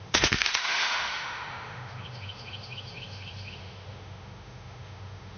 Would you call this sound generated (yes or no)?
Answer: yes